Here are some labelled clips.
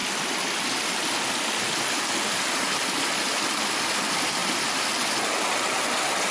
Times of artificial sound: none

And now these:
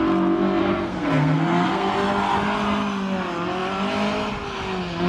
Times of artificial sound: 0.6-1.9 (codec, SNAC)